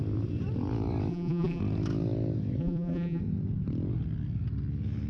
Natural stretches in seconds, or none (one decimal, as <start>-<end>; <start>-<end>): 0.0-1.1; 1.6-2.6; 3.2-5.1